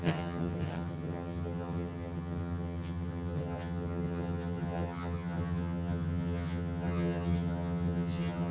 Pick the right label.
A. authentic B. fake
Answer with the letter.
B